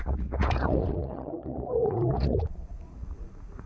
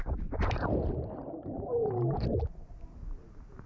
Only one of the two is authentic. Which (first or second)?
second